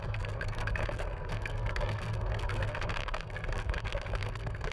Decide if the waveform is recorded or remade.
remade